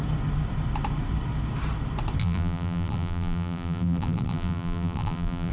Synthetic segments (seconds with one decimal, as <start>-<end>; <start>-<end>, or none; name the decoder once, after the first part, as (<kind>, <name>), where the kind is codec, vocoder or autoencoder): 2.2-5.5 (vocoder, BigVGAN v2)